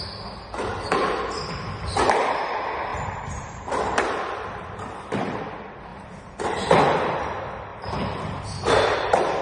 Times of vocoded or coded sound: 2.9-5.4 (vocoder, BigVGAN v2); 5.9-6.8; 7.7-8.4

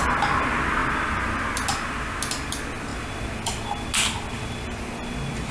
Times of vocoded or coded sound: none

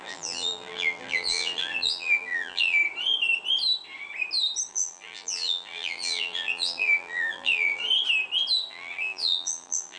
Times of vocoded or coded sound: 0.0-2.8 (vocoder, BigVGAN v2); 4.7-7.8; 8.7-10.0

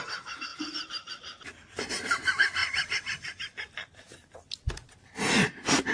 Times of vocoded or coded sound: 0.5-1.8 (vocoder, BigVGAN v2); 2.6-4.9

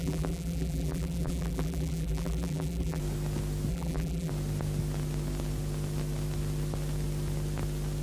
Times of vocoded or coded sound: 0.0-3.0 (vocoder, BigVGAN v2); 3.7-4.3

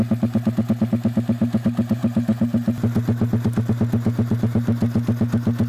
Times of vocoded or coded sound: none

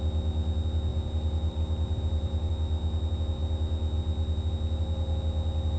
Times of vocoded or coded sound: 0.9-2.5 (vocoder, BigVGAN v2)

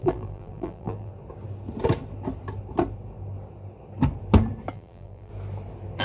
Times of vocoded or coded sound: 0.0-1.1 (vocoder, BigVGAN v2); 4.7-5.3